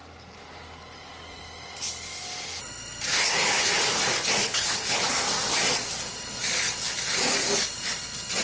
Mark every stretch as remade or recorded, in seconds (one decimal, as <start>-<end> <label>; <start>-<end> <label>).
0.0-3.1 recorded; 3.1-3.7 remade; 3.7-4.4 recorded; 4.4-5.1 remade; 5.1-8.4 recorded

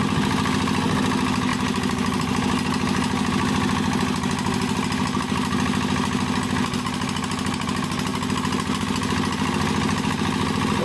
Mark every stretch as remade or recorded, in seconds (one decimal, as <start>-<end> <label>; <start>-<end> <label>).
0.0-10.8 recorded

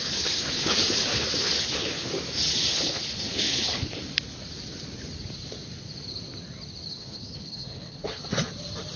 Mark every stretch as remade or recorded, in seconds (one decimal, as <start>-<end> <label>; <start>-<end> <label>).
0.0-2.1 remade; 2.1-2.7 recorded; 2.7-4.0 remade; 4.0-6.9 recorded; 6.9-8.2 remade; 8.2-9.0 recorded